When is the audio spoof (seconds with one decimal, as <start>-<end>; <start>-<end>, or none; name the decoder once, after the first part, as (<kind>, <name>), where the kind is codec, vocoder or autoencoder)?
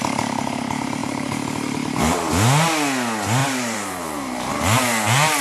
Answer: 1.0-2.3 (vocoder, BigVGAN v2); 3.4-4.5